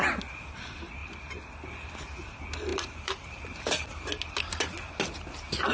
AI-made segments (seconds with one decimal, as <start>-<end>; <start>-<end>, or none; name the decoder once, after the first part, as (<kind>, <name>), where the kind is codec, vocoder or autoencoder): 2.7-3.3 (vocoder, BigVGAN v2)